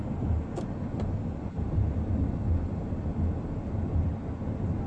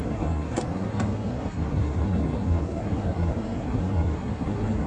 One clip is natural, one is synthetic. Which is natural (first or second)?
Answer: first